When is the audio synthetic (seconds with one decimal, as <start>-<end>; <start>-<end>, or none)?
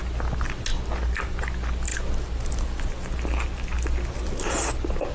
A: none